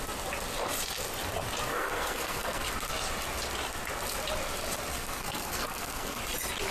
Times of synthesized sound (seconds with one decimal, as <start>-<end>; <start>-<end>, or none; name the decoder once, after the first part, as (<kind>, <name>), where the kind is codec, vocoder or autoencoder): 1.7-2.7 (codec, SNAC); 4.9-6.2